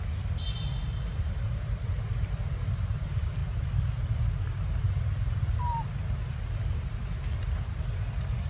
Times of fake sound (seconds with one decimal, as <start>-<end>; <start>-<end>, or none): none